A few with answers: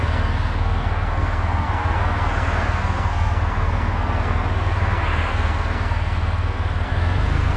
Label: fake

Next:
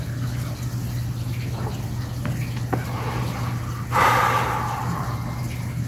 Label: real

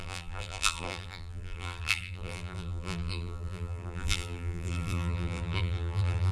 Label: fake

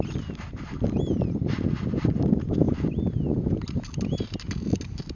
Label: real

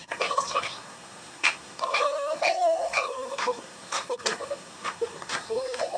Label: fake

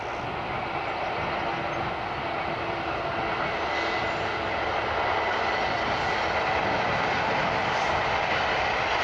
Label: real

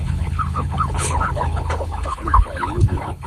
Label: fake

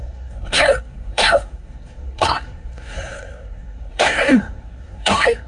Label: fake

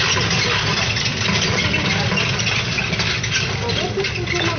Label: real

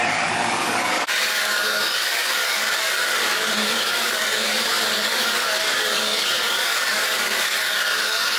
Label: fake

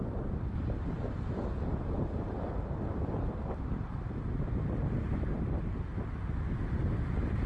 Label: real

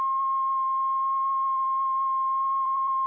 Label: fake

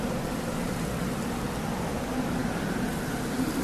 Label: real